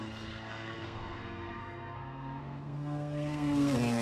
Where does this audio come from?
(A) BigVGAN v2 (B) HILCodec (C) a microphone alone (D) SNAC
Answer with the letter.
D